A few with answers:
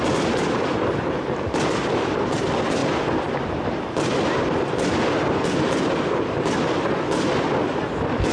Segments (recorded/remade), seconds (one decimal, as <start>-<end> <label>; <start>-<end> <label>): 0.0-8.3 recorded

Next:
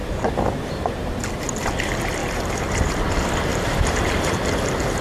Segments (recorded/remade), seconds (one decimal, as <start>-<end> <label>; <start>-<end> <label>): 0.0-1.1 remade; 1.1-2.2 recorded; 2.2-2.9 remade; 2.9-3.5 recorded; 3.5-4.3 remade; 4.3-5.0 recorded

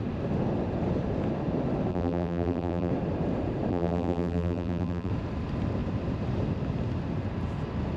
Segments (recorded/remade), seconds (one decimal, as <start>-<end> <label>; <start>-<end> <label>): 0.0-1.9 recorded; 1.9-2.9 remade; 2.9-3.7 recorded; 3.7-5.1 remade; 5.1-8.0 recorded

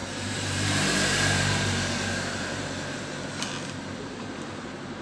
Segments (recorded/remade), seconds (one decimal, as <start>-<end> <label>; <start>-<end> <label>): 0.0-3.0 remade; 3.0-5.0 recorded

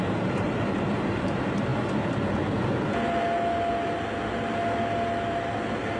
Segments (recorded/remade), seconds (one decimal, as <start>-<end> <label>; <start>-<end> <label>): 0.0-1.7 remade; 1.7-5.3 recorded; 5.3-6.0 remade

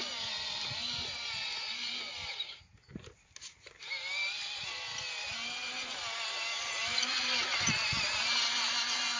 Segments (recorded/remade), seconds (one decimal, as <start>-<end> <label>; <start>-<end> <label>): 0.0-9.2 recorded

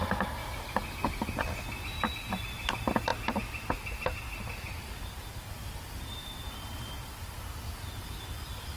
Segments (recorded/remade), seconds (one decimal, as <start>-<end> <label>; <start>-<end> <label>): 0.0-0.4 remade; 0.4-2.3 recorded; 2.3-8.8 remade